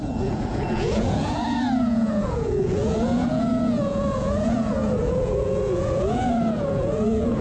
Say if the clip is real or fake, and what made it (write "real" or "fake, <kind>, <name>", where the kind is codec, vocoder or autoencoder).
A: fake, vocoder, Vocos